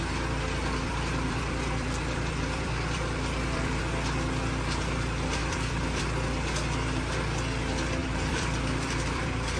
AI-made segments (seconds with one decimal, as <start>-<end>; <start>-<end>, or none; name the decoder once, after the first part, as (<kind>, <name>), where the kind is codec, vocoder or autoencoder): 0.6-3.8 (vocoder, BigVGAN v2); 5.4-6.0; 8.0-9.6